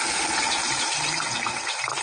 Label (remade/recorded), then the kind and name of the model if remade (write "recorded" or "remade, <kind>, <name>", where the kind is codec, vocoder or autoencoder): remade, vocoder, BigVGAN v2